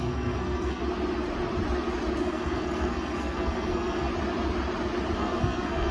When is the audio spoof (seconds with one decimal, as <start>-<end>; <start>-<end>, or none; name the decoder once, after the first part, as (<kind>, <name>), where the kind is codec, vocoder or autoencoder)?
0.0-0.8 (codec, SNAC); 2.2-4.1; 5.2-5.9